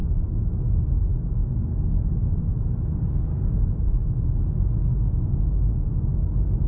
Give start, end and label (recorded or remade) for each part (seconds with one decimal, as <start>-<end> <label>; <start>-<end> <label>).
0.0-6.7 recorded